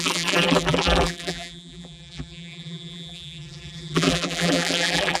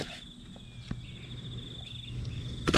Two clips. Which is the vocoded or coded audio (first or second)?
first